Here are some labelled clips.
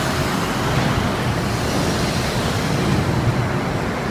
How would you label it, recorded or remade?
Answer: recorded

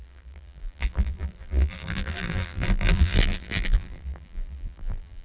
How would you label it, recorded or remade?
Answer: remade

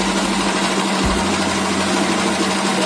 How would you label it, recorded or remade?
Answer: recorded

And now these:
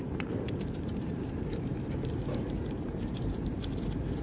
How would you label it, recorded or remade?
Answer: remade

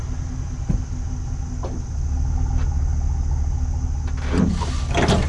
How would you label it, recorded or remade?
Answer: recorded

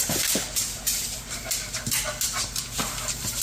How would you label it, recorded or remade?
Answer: remade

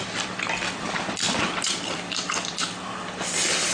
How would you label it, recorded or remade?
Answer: remade